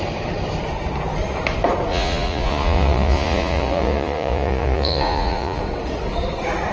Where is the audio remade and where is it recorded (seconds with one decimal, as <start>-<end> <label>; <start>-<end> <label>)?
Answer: 0.0-1.9 recorded; 1.9-5.6 remade; 5.6-6.7 recorded